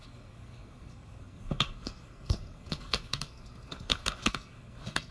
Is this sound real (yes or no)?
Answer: no